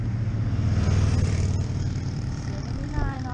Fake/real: fake